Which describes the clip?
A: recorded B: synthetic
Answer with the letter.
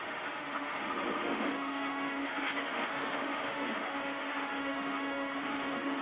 B